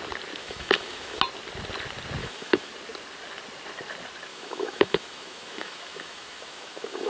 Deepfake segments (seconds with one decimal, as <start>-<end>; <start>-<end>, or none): 0.4-1.2; 2.2-2.7; 4.3-7.1